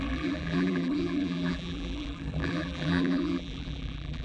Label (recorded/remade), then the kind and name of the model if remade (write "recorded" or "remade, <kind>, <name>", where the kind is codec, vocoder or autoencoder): remade, vocoder, BigVGAN v2